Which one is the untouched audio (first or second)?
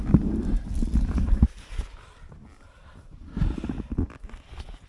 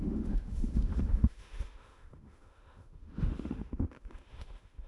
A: first